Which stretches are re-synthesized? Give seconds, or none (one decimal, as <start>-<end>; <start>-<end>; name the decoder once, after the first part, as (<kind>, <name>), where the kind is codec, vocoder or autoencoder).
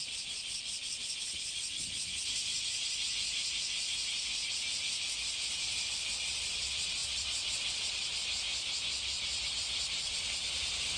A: 0.0-2.1 (vocoder, Vocos); 5.9-8.5; 10.0-11.0